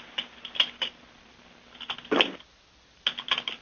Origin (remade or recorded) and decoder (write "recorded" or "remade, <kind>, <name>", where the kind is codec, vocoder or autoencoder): recorded